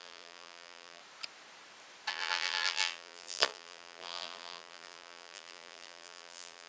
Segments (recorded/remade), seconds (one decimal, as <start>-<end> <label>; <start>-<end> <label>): 0.0-1.0 remade; 1.0-2.1 recorded; 2.1-6.7 remade